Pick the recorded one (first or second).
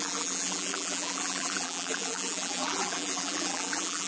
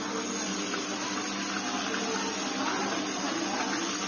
second